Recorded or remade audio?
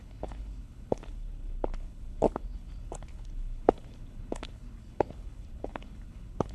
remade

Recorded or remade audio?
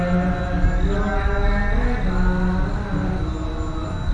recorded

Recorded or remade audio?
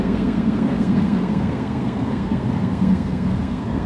remade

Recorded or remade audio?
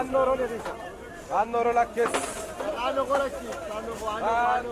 recorded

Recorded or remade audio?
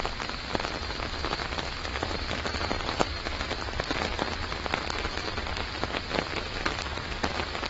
recorded